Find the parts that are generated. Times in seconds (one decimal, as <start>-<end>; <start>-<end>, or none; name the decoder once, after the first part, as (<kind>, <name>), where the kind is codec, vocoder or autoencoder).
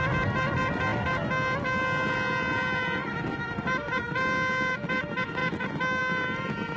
none